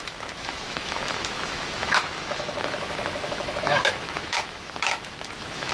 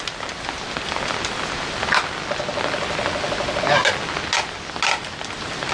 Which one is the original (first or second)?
second